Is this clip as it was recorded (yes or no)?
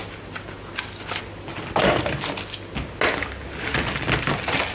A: yes